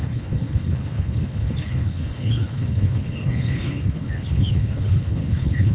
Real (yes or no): no